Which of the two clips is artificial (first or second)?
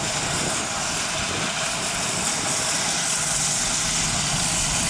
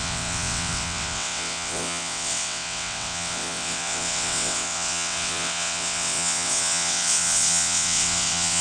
second